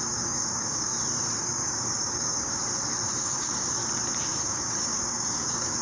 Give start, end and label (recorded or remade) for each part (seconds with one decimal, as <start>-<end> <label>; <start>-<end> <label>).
0.0-0.9 remade; 0.9-1.4 recorded; 1.4-2.6 remade; 2.6-3.2 recorded; 3.2-3.8 remade; 3.8-4.4 recorded; 4.4-5.8 remade